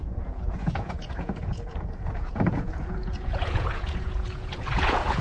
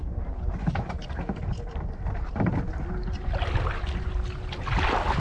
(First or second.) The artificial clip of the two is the first